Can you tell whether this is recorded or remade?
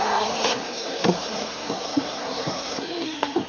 remade